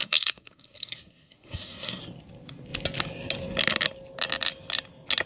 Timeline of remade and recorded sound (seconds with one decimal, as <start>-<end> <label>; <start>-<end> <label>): 0.0-2.0 remade; 2.0-5.3 recorded